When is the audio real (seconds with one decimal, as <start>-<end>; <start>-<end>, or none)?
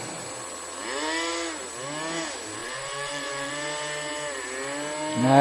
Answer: 0.0-2.6; 3.5-5.4